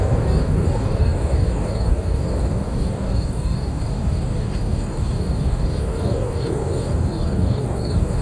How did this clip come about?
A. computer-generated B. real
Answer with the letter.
A